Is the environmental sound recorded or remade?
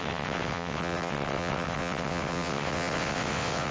remade